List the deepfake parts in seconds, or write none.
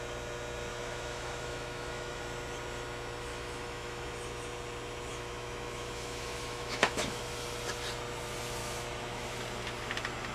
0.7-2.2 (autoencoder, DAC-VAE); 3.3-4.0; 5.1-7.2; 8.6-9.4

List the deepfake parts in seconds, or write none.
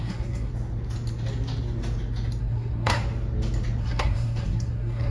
0.0-0.5 (codec, SNAC); 2.4-3.0; 3.8-5.1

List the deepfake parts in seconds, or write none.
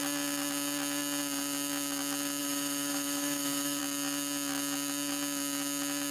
2.4-3.8 (autoencoder, DAC-VAE)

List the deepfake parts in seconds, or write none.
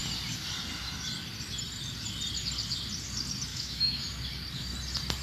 3.5-4.0 (autoencoder, DAC-VAE)